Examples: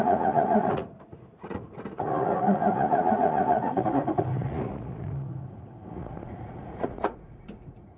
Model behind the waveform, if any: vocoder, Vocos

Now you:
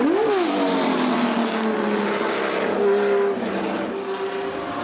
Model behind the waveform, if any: none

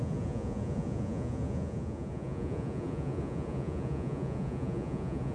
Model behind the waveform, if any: vocoder, Vocos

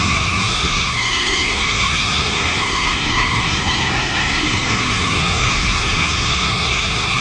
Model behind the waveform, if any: codec, SNAC